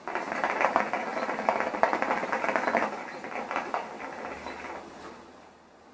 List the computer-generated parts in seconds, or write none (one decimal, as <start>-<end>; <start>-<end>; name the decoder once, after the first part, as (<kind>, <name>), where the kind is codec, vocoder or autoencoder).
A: none

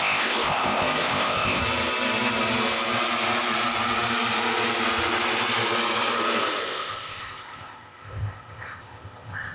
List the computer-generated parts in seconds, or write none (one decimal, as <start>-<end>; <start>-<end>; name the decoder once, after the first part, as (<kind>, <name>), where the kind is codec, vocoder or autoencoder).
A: 0.0-1.6 (codec, ZipCodec); 6.6-9.5

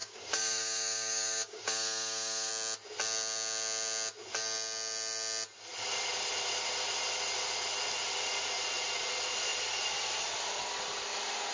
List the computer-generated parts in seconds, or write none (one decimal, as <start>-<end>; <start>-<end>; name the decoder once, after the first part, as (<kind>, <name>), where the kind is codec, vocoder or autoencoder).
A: 0.0-2.5 (codec, DAC)

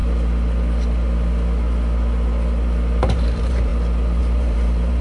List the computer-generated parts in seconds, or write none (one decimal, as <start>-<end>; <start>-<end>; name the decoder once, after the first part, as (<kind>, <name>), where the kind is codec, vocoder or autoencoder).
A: 3.0-3.7 (vocoder, BigVGAN v2); 4.2-5.0